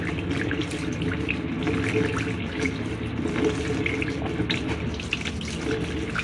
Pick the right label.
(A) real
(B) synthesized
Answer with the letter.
A